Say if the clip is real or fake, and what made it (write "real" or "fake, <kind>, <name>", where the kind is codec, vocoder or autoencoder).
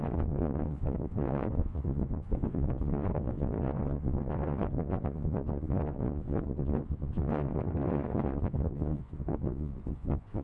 fake, vocoder, Vocos